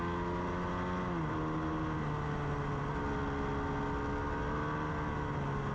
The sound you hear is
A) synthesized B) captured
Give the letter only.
B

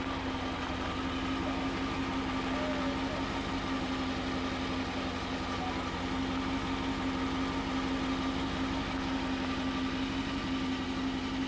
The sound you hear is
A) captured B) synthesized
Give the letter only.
A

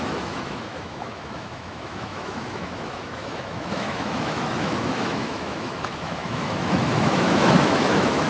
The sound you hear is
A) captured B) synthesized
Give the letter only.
B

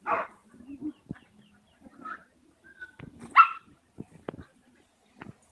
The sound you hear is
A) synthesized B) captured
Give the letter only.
B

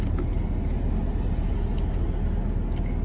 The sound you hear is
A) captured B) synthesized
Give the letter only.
A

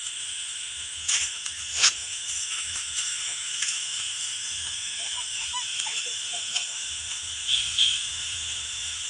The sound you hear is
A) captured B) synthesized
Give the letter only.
B